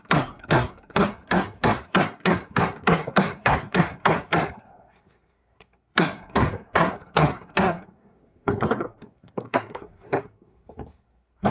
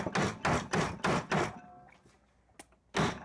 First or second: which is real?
second